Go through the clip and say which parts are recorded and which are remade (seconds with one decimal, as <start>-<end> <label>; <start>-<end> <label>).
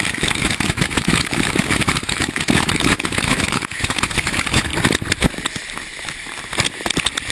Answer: 0.0-4.7 remade; 4.7-7.3 recorded